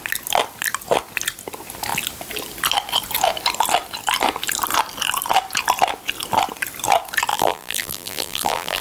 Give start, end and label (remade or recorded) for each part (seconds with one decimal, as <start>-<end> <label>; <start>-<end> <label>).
0.0-7.3 recorded; 7.3-8.8 remade